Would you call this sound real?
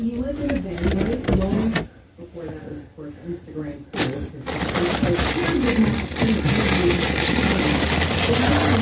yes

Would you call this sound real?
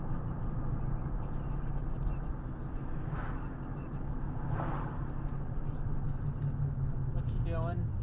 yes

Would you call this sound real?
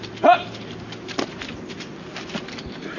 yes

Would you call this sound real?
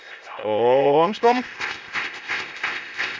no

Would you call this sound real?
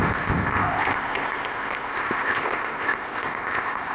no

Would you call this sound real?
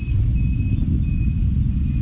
yes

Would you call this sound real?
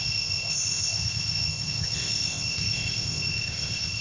no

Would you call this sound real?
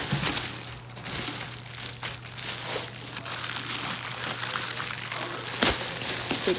yes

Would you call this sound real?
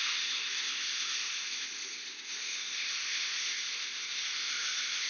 no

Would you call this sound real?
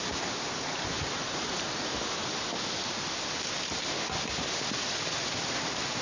yes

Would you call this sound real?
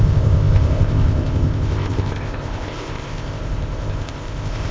no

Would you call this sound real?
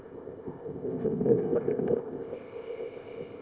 no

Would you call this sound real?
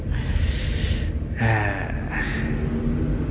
yes